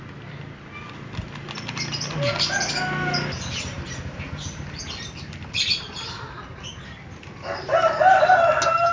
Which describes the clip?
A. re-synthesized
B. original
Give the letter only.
B